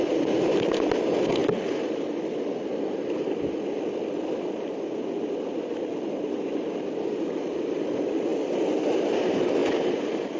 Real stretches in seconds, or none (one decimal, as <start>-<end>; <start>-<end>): 0.0-10.4